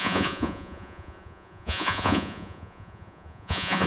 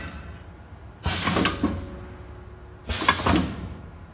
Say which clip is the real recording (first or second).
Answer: second